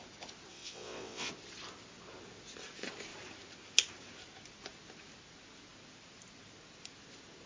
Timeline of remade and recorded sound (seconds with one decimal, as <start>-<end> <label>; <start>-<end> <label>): 0.0-0.5 recorded; 0.5-1.3 remade; 1.3-7.5 recorded